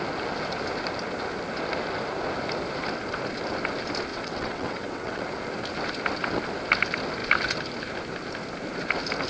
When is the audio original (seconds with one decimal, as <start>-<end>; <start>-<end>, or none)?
0.0-4.1; 5.2-9.3

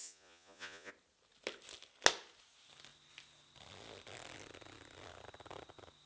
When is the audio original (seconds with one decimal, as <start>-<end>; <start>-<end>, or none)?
0.9-6.1

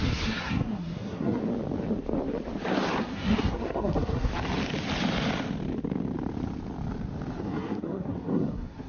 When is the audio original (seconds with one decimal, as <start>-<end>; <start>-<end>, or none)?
1.4-3.0; 4.3-7.4

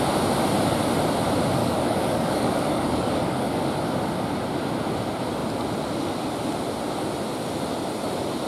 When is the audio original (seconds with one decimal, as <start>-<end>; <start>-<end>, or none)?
0.0-1.6; 3.7-8.5

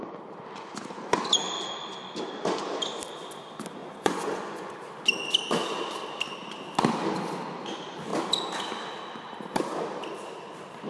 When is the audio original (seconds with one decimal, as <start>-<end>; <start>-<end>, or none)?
0.0-3.8; 4.7-10.9

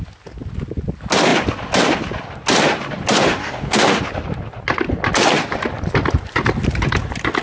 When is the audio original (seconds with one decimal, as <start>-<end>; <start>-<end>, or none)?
0.0-3.4; 4.0-7.4